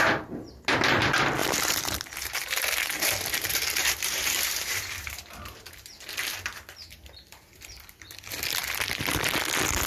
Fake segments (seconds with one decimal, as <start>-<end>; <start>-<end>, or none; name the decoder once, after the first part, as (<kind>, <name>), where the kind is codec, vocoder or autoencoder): 1.4-5.2 (vocoder, BigVGAN v2)

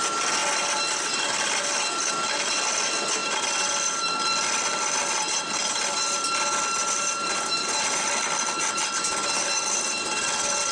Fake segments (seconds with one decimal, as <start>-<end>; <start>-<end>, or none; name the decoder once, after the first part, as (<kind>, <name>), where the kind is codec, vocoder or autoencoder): 6.8-8.0 (vocoder, BigVGAN v2)